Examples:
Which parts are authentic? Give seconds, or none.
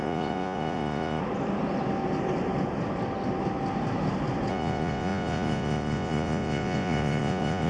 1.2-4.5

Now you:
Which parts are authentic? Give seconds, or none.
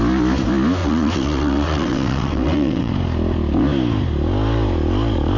0.0-0.8; 2.9-5.4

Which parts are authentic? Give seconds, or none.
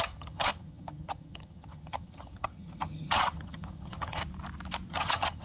4.2-4.9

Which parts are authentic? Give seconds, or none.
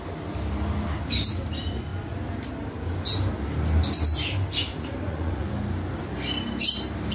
0.0-4.7; 5.5-7.1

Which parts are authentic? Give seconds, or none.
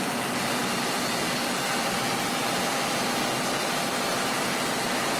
0.0-5.2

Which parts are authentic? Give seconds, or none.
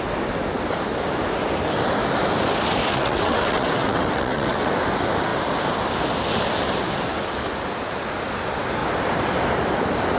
0.0-2.8; 4.7-10.2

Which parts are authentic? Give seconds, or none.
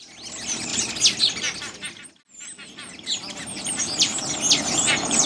0.0-5.3